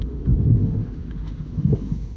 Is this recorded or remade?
remade